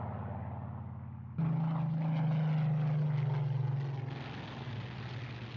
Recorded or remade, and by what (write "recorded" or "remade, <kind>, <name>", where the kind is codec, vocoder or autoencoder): recorded